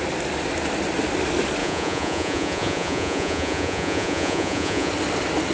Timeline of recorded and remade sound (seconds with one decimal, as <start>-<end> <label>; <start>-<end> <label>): 0.0-1.6 recorded; 1.6-4.9 remade; 4.9-5.5 recorded